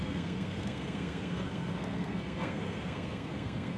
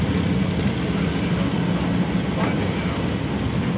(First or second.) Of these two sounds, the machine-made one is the first